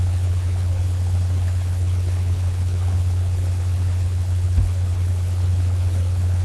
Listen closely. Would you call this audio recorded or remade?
remade